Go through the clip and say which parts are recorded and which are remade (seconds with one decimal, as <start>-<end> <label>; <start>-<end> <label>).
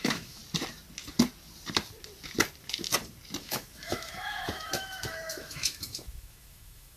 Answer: 0.0-0.4 remade; 0.4-3.4 recorded; 3.4-7.0 remade